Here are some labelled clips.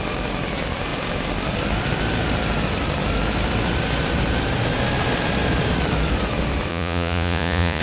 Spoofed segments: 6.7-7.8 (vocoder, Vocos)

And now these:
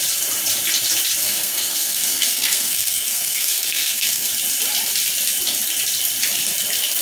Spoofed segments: 1.2-4.3 (codec, SNAC)

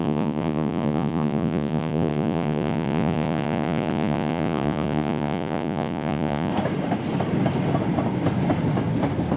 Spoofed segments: 0.0-6.5 (vocoder, Vocos)

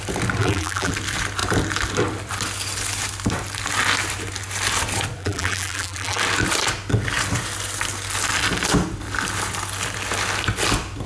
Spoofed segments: 0.4-0.9 (vocoder, BigVGAN v2); 5.2-6.2

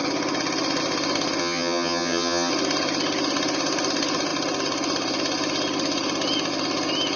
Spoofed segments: 1.4-2.5 (vocoder, HiFi-GAN)